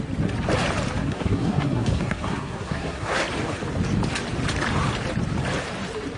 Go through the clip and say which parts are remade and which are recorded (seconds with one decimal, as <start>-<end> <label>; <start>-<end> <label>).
0.0-1.0 recorded; 1.0-3.2 remade; 3.2-6.2 recorded